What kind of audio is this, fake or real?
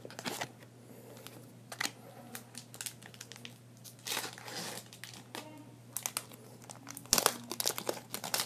real